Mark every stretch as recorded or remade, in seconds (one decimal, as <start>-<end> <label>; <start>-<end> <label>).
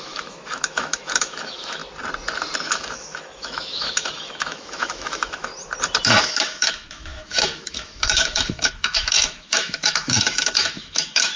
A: 0.0-1.8 remade; 1.8-2.6 recorded; 2.6-5.5 remade; 5.5-6.3 recorded; 6.3-11.4 remade